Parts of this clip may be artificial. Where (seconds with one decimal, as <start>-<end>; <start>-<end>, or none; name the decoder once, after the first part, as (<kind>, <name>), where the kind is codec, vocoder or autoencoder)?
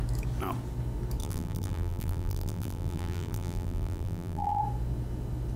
1.2-4.6 (vocoder, BigVGAN v2)